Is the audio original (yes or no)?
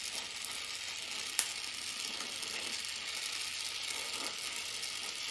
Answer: yes